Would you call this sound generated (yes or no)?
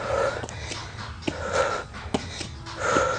no